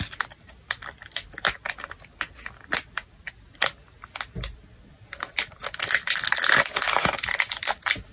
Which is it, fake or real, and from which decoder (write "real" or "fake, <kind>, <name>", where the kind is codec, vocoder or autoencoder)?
real